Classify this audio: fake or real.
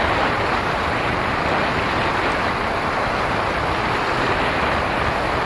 real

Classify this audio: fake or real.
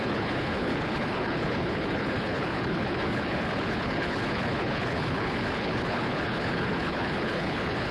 fake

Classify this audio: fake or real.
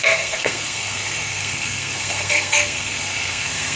fake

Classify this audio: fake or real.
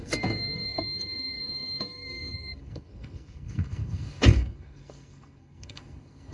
fake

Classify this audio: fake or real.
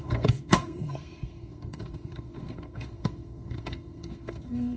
fake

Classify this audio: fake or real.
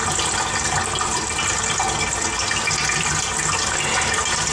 real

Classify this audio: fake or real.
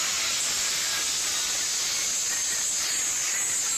real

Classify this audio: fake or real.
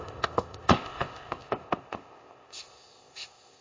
fake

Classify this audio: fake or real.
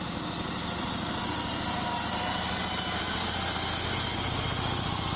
real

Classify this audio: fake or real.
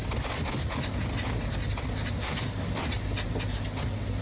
real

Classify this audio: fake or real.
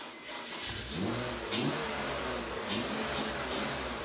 real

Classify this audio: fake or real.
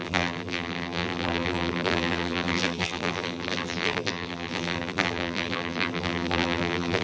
fake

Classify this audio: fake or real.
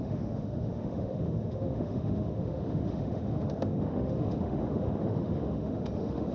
fake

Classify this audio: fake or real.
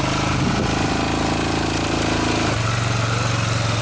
real